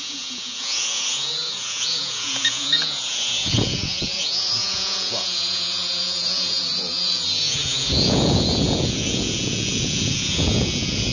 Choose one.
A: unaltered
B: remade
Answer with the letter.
B